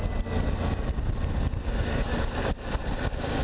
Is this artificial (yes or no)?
no